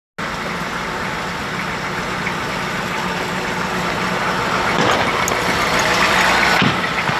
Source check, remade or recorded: recorded